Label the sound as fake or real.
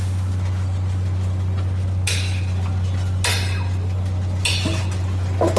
real